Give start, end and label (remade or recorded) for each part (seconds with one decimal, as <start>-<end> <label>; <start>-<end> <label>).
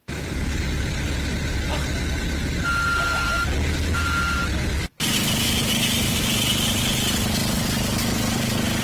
0.0-8.8 recorded